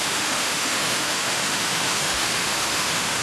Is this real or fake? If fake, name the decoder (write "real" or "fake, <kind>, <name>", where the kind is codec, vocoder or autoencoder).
fake, autoencoder, DAC-VAE